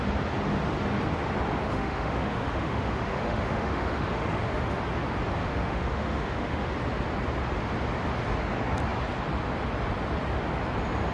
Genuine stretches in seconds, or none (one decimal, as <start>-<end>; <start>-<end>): 0.0-1.6; 4.8-5.4; 6.7-11.1